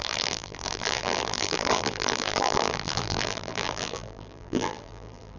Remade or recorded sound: remade